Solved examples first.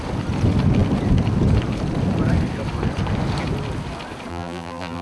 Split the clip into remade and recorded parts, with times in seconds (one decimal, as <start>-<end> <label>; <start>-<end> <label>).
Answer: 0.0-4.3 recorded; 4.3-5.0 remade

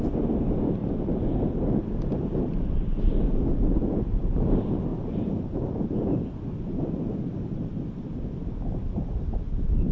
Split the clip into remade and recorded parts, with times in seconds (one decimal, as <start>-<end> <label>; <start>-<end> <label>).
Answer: 0.0-0.8 recorded; 0.8-3.5 remade; 3.5-9.9 recorded

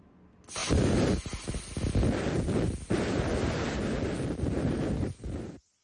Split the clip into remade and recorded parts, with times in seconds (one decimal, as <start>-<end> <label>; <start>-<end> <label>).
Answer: 0.0-4.6 recorded; 4.6-5.8 remade

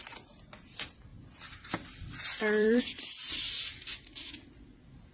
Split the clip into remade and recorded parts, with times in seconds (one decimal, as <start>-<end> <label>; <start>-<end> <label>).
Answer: 0.0-1.1 recorded; 1.1-2.8 remade; 2.8-5.1 recorded